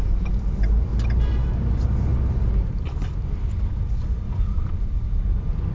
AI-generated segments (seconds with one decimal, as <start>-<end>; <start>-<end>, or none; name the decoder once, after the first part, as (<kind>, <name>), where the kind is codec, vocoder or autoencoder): 0.0-0.9 (vocoder, BigVGAN v2); 1.7-5.7